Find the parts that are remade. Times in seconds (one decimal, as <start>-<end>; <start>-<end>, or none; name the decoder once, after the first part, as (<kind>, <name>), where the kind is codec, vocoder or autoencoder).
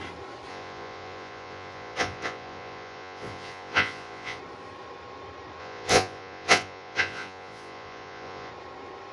0.5-4.4 (vocoder, Vocos); 5.6-8.5